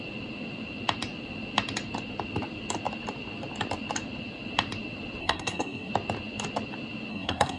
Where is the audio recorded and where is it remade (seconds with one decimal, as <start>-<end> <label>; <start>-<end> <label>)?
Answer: 0.0-5.2 recorded; 5.2-5.9 remade; 5.9-7.1 recorded; 7.1-7.6 remade

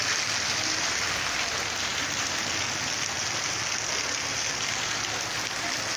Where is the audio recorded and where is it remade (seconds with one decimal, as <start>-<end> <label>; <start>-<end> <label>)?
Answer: 0.0-6.0 recorded

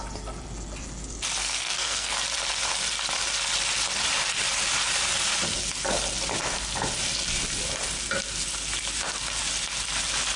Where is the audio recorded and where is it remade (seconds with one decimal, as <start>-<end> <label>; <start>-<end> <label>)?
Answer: 0.0-1.4 recorded; 1.4-2.2 remade; 2.2-10.4 recorded

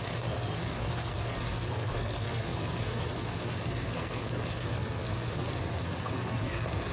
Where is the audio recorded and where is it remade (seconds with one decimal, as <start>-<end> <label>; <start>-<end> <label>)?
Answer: 0.0-6.9 remade